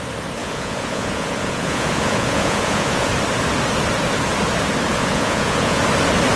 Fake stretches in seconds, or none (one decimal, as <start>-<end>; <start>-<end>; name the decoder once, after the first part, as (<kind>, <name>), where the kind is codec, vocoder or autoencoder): 0.4-3.1 (vocoder, Vocos); 4.9-5.8